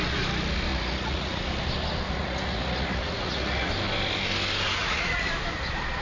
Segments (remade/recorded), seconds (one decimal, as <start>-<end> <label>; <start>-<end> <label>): 0.0-0.7 recorded; 0.7-1.4 remade; 1.4-2.2 recorded; 2.2-3.7 remade; 3.7-4.8 recorded; 4.8-5.3 remade; 5.3-6.0 recorded